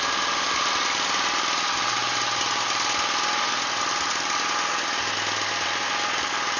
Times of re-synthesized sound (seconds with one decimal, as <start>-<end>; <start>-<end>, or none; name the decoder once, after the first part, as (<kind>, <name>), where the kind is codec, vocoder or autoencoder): none